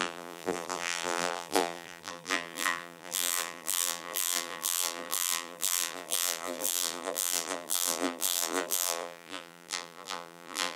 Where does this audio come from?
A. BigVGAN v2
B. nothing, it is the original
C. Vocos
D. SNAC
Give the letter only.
A